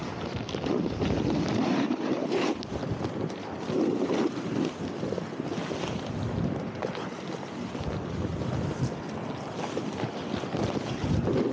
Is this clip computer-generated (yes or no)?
no